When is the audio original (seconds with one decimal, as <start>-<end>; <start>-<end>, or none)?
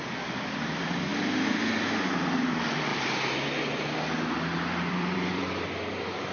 1.1-2.1; 2.9-4.9